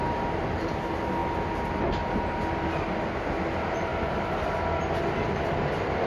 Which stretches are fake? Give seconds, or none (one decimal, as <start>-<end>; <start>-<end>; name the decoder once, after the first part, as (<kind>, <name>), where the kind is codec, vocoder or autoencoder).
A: none